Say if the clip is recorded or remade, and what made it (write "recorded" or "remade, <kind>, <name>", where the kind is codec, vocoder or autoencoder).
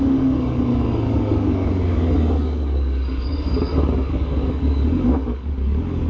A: remade, codec, DAC